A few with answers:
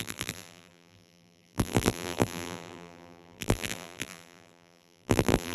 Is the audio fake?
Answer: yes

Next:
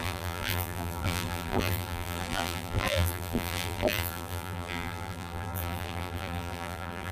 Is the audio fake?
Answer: yes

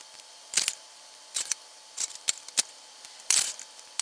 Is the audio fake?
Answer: yes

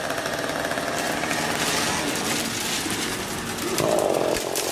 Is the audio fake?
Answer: no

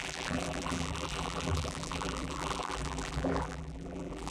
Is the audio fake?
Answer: yes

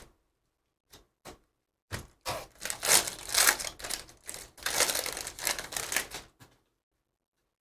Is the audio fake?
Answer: no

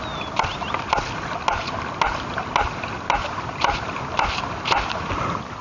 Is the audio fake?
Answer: no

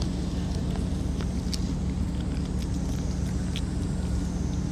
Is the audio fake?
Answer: no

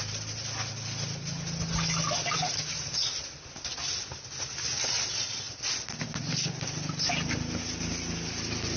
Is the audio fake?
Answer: no